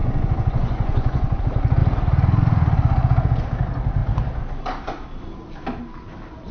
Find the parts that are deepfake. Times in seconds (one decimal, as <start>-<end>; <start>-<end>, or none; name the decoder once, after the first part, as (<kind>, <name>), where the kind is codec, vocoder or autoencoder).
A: 0.0-1.4 (vocoder, Vocos)